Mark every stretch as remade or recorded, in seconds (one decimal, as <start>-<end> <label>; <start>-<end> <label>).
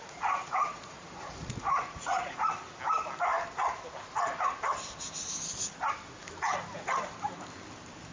0.0-2.5 remade; 2.5-8.1 recorded